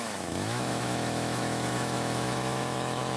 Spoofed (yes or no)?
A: yes